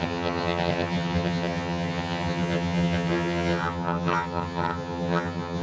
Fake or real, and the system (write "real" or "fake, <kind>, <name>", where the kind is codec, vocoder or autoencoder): fake, vocoder, HiFi-GAN